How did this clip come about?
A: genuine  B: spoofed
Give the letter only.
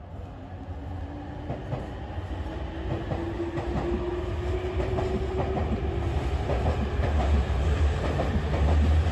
A